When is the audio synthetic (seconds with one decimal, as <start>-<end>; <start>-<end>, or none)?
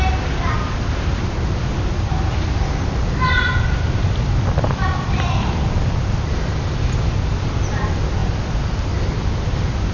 none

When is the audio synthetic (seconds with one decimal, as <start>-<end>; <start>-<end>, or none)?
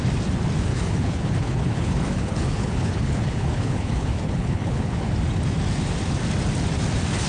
0.7-5.1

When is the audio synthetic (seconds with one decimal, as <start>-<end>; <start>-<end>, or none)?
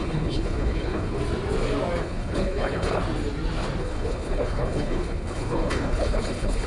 0.0-1.2; 2.0-3.0; 3.8-6.7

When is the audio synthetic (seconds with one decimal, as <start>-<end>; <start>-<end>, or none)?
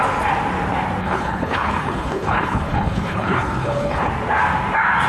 1.0-4.1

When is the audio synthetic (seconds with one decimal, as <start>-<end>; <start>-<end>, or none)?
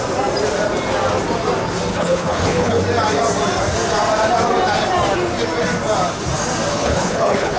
1.9-2.8; 6.7-7.6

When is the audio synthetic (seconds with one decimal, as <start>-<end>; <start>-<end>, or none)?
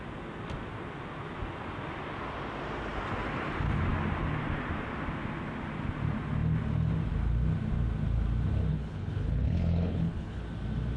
8.7-10.4